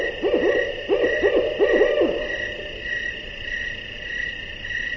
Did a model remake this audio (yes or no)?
no